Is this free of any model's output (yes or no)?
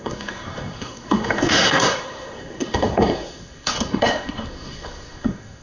no